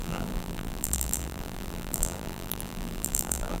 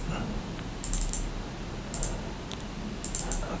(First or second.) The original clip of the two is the second